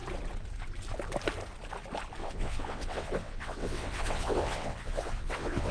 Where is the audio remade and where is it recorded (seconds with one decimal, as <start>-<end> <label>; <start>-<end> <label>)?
0.0-2.2 recorded; 2.2-5.7 remade

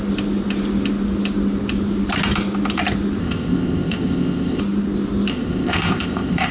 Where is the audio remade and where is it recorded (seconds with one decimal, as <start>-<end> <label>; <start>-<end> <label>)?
0.0-3.2 recorded; 3.2-4.6 remade; 4.6-5.3 recorded; 5.3-6.5 remade

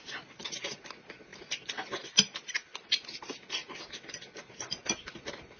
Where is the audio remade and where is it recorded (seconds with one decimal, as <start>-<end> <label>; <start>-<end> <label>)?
0.0-5.6 remade